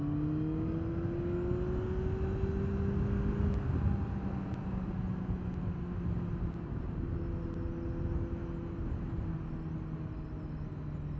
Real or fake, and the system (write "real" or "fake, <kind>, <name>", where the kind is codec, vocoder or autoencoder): real